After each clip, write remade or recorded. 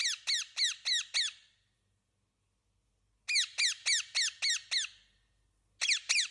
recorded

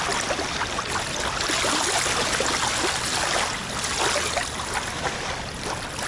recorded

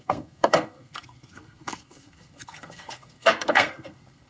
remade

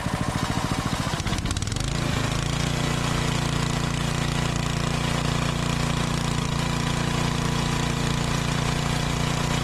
recorded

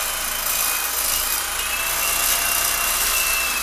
recorded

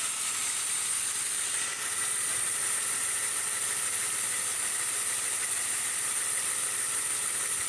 recorded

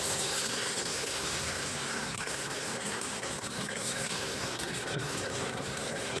remade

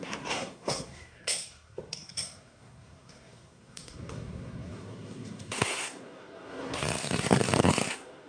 remade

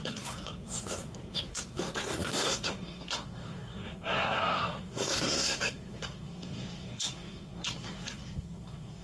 remade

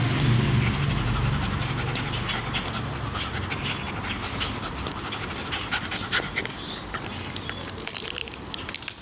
recorded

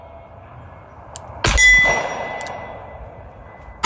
recorded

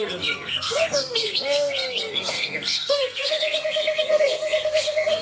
remade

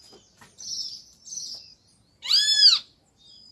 recorded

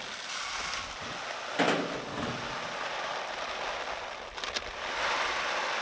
recorded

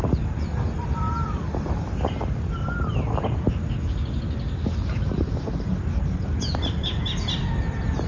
recorded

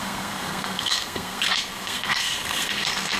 remade